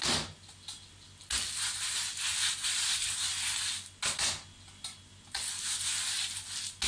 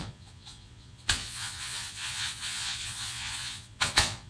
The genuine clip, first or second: first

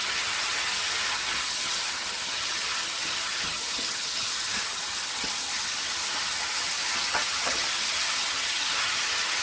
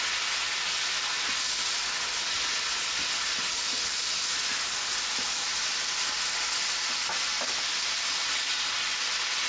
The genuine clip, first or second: second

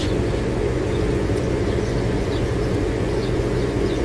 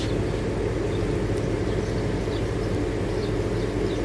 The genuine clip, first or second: second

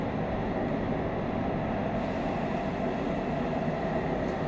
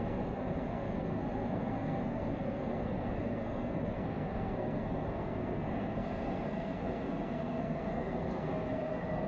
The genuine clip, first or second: first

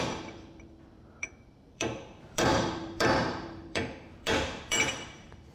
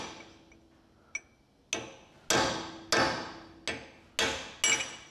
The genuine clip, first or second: second